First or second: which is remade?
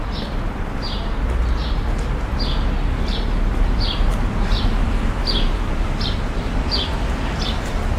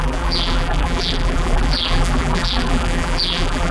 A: second